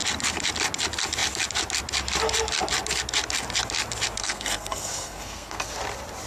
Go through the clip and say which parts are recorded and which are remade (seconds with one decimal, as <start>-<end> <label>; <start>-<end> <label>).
0.0-4.2 recorded; 4.2-5.7 remade; 5.7-6.3 recorded